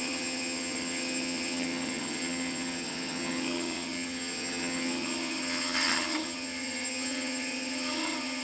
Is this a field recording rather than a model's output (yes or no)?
no